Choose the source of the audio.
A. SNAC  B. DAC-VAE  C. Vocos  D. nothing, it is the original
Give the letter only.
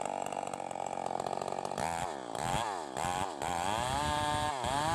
D